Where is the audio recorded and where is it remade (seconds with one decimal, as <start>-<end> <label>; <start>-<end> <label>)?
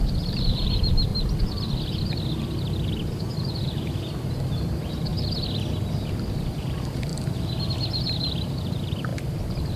0.0-1.1 remade; 1.1-4.4 recorded; 4.4-5.1 remade; 5.1-6.6 recorded; 6.6-7.1 remade; 7.1-7.7 recorded; 7.7-9.8 remade